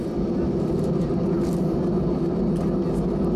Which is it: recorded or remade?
recorded